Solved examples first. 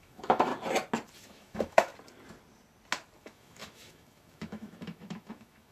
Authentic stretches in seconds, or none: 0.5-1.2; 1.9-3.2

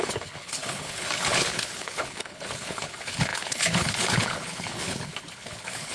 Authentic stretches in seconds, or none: none

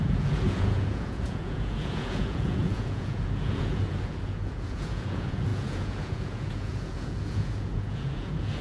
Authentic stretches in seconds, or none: none